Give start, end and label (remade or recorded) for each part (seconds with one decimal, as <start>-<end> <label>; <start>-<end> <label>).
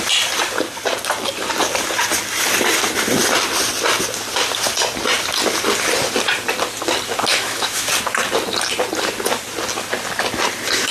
0.0-7.3 recorded; 7.3-7.9 remade; 7.9-10.9 recorded